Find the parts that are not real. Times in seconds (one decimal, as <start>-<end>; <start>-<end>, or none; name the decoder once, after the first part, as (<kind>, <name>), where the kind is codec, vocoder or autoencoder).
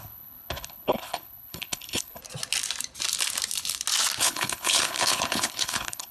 0.0-2.2 (codec, HILCodec); 4.2-6.1